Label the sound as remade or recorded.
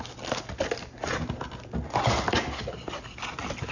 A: recorded